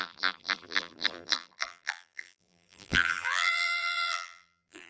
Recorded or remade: remade